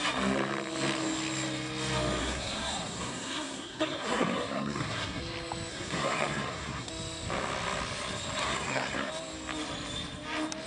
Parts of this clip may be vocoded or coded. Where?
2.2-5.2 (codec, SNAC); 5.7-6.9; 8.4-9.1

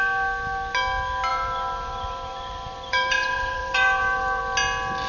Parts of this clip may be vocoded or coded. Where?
1.3-4.4 (vocoder, BigVGAN v2)

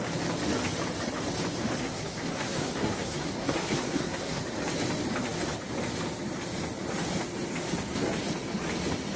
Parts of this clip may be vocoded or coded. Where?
1.8-4.4 (codec, SNAC)

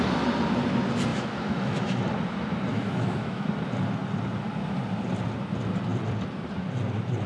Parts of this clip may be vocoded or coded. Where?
1.1-2.0 (autoencoder, DAC-VAE); 2.7-3.5

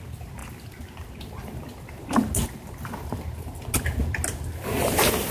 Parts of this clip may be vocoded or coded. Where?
none

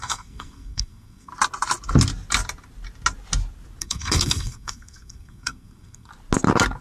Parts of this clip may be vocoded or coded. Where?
0.0-1.3 (codec, SNAC); 3.8-6.1

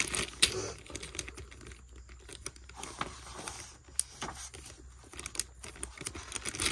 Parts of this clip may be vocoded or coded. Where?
none

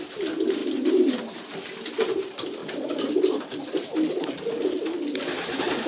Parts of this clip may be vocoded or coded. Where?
0.6-1.2 (vocoder, BigVGAN v2); 2.6-4.1